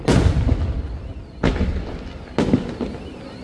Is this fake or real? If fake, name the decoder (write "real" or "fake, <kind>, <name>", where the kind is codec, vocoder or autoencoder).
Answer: real